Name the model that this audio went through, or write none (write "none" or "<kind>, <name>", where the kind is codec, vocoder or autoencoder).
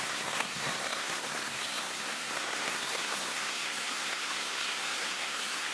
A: codec, SNAC